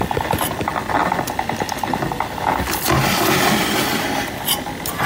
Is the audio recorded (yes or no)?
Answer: yes